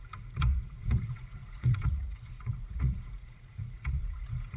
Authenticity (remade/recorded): remade